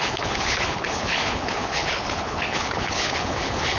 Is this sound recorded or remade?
remade